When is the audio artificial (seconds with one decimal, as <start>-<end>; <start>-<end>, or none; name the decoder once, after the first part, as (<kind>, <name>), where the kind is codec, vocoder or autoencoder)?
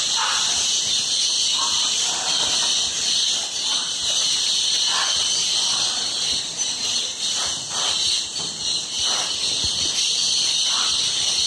none